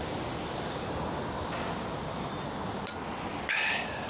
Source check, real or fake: real